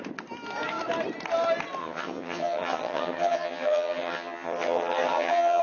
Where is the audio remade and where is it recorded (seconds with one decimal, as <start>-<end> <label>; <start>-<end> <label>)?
0.0-1.8 recorded; 1.8-5.6 remade